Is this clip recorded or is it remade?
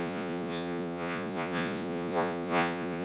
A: remade